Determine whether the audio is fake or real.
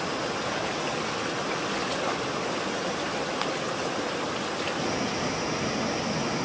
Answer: real